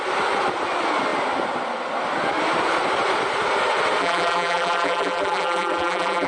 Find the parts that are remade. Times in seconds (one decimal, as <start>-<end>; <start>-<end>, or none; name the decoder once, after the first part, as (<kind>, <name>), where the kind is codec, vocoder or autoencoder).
4.0-6.3 (vocoder, BigVGAN v2)